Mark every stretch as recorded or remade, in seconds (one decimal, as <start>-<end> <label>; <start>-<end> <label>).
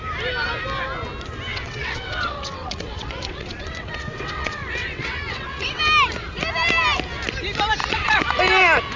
0.0-1.5 recorded; 1.5-5.8 remade; 5.8-7.8 recorded; 7.8-8.4 remade; 8.4-9.0 recorded